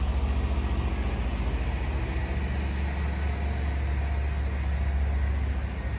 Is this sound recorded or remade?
recorded